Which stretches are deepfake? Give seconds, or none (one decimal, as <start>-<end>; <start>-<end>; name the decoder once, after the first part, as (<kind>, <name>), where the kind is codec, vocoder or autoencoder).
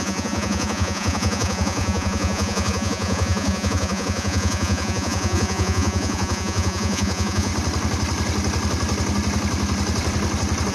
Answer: 0.0-7.5 (vocoder, Vocos)